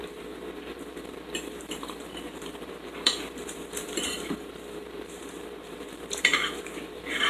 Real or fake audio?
fake